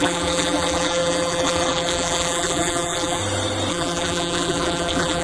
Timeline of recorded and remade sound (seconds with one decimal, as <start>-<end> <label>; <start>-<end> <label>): 0.0-3.2 remade; 3.2-3.7 recorded; 3.7-5.2 remade